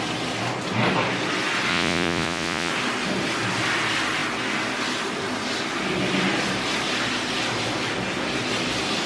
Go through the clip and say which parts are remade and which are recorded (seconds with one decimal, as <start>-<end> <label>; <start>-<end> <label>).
0.0-1.7 recorded; 1.7-2.7 remade; 2.7-9.1 recorded